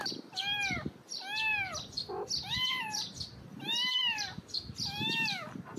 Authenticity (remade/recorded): recorded